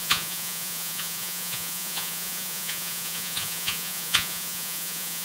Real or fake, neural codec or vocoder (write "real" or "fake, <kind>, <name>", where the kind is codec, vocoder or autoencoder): fake, vocoder, Vocos